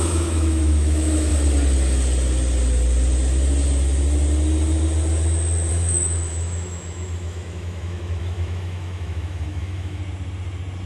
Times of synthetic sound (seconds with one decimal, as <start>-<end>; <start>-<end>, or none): 0.0-1.3; 5.7-10.0